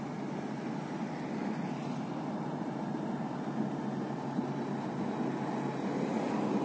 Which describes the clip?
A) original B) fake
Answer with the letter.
A